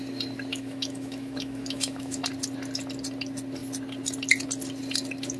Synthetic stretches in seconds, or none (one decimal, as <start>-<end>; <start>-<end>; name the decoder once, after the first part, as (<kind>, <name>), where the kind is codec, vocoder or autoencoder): 0.5-2.2 (autoencoder, DAC-VAE)